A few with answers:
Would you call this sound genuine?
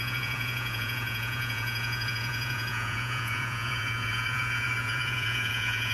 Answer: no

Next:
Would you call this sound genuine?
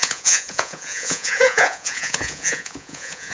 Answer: no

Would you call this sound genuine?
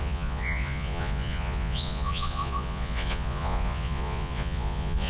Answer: no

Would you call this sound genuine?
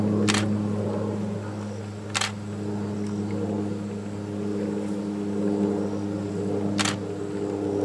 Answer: yes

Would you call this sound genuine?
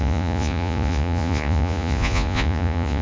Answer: no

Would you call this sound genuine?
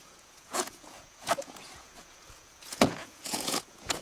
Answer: no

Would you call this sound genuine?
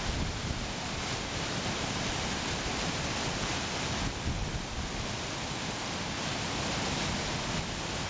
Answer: yes